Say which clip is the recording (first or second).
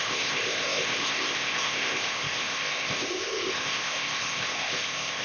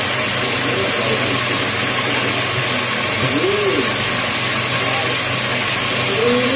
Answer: second